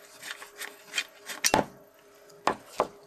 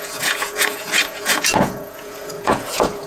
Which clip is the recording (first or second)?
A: first